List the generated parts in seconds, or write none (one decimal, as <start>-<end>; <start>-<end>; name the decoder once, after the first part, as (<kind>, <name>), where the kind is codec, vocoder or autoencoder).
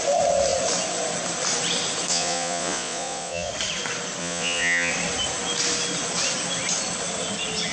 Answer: 2.1-3.5 (vocoder, Vocos); 4.2-4.9